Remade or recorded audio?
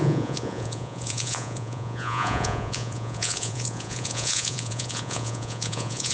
remade